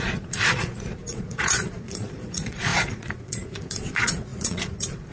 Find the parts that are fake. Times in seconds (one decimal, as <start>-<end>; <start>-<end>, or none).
0.0-5.1